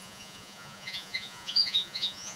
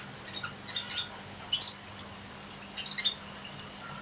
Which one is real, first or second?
second